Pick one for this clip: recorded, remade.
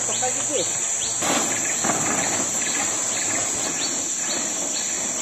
recorded